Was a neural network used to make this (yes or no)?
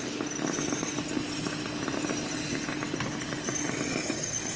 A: no